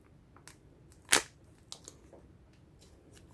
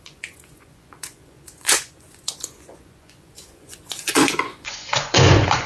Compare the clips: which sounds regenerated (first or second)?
second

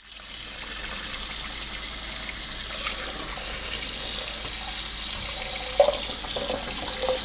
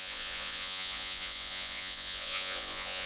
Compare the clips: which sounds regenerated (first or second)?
second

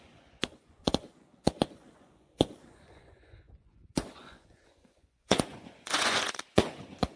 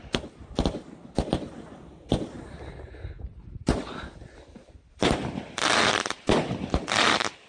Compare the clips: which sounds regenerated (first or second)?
first